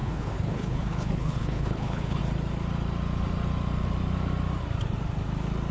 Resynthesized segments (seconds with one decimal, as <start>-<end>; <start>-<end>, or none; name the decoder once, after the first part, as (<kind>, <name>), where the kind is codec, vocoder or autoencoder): 0.0-2.2 (codec, HILCodec)